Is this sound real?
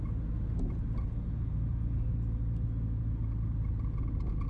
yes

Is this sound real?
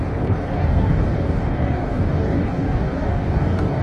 no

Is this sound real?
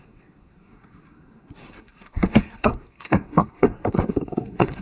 no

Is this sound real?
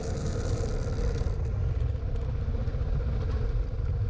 yes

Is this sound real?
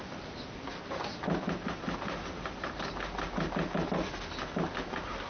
yes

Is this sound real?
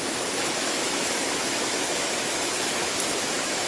no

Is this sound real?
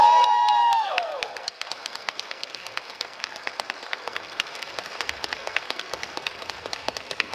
no